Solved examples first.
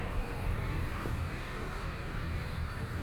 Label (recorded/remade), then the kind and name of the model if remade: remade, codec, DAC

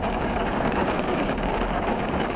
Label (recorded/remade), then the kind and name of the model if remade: remade, codec, DAC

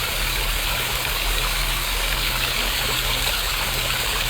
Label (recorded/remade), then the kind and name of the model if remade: remade, codec, DAC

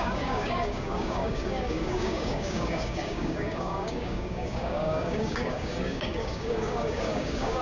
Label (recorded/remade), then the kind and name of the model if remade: remade, codec, DAC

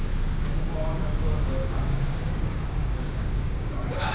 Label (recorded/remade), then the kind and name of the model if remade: remade, codec, DAC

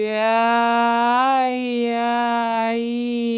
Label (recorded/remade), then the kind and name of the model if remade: remade, codec, DAC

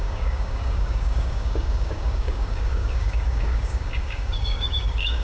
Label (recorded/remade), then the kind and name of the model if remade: remade, codec, DAC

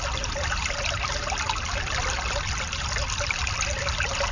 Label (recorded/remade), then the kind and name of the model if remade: recorded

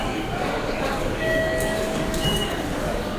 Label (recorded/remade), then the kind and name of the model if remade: remade, codec, DAC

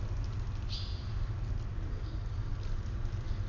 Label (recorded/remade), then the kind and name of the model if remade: recorded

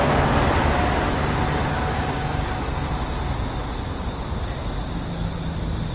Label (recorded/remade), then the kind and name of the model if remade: recorded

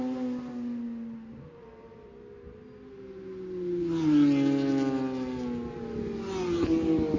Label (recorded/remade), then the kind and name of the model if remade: recorded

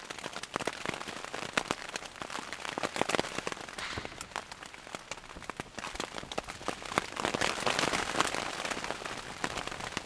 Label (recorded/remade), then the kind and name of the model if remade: recorded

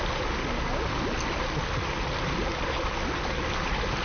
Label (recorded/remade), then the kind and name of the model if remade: recorded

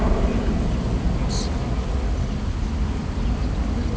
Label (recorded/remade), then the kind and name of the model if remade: recorded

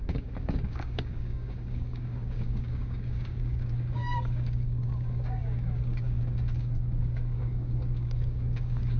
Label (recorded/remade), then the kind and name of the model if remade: remade, codec, DAC